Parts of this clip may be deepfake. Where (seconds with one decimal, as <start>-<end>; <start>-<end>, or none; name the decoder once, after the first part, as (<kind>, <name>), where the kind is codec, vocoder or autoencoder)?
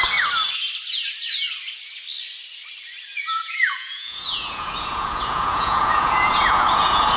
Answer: 3.1-7.2 (vocoder, Vocos)